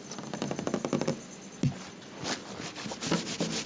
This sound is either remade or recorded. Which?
recorded